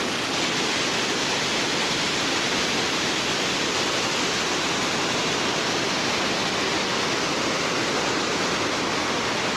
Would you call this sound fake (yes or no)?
no